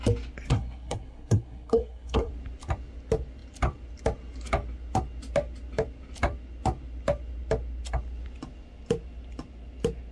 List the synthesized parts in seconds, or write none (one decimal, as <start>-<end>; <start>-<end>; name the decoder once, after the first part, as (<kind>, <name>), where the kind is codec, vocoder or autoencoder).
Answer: 0.5-2.3 (codec, SNAC)

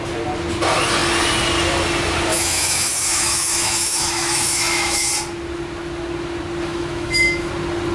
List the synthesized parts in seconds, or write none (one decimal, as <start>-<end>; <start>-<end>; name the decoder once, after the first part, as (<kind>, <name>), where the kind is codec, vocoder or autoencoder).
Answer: 2.3-5.1 (autoencoder, DAC-VAE); 6.7-7.5

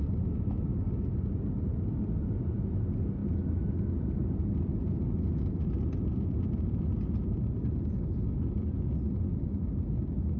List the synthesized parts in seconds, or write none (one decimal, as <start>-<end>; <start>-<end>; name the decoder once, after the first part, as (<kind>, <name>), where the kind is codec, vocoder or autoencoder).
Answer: none

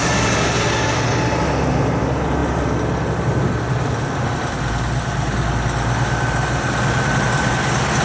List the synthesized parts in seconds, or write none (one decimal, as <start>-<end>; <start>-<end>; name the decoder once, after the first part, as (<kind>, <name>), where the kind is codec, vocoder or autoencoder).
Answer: none